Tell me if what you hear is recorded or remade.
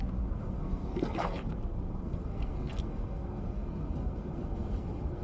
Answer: remade